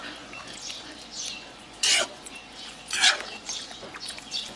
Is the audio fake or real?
fake